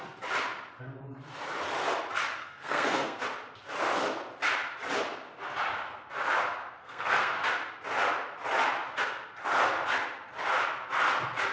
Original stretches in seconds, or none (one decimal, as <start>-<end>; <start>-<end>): 0.0-2.4; 3.2-6.8; 7.4-11.5